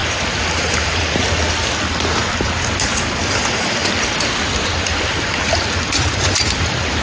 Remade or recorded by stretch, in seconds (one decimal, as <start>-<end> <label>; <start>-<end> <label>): 0.0-0.8 recorded; 0.8-1.3 remade; 1.3-3.2 recorded; 3.2-3.8 remade; 3.8-7.0 recorded